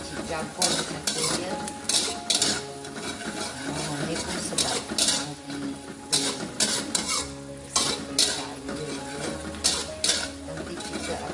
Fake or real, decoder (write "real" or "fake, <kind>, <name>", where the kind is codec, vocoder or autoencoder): real